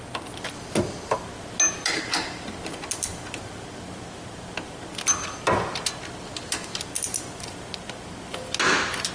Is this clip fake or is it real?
real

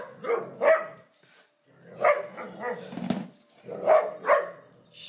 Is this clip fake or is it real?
real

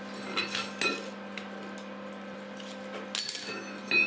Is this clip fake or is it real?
real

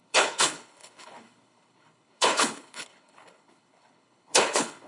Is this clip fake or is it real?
fake